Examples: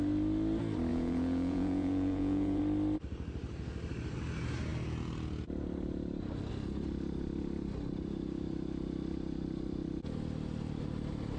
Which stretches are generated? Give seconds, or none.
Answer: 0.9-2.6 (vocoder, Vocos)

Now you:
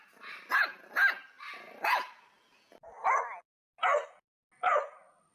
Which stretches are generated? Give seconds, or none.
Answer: none

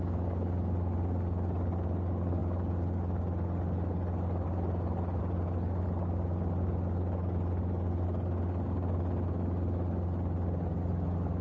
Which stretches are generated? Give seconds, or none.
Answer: none

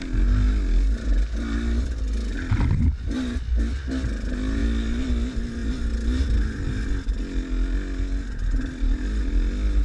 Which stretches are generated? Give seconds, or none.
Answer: none

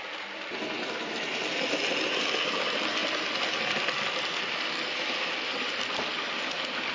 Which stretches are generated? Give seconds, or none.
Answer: none

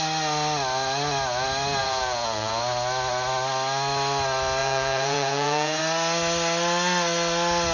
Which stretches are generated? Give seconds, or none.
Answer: 1.8-2.6 (vocoder, Vocos); 4.6-5.8

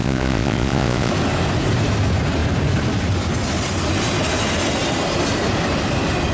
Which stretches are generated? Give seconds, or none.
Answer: 0.0-1.1 (vocoder, Vocos)